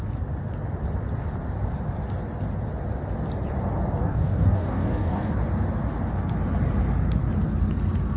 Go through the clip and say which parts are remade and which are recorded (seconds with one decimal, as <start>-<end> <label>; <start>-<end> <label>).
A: 0.0-4.0 recorded; 4.0-5.3 remade; 5.3-8.2 recorded